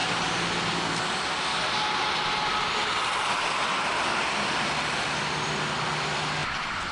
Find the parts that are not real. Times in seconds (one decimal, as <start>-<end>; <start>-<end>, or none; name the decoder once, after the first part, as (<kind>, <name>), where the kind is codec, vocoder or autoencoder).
none